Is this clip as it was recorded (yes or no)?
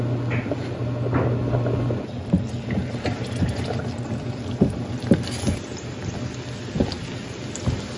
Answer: yes